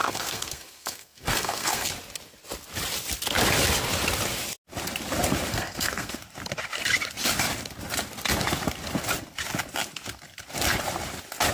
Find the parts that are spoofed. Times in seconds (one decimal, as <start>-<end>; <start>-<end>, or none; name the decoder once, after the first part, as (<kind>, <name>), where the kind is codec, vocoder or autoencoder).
0.0-1.9 (codec, SNAC); 5.5-6.2